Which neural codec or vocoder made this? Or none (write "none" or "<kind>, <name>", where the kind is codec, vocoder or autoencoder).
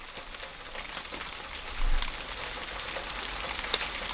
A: none